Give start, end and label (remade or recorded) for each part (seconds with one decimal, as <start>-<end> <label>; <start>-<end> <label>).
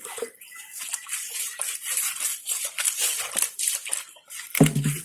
0.0-1.0 recorded; 1.0-1.6 remade; 1.6-2.3 recorded; 2.3-3.2 remade; 3.2-5.0 recorded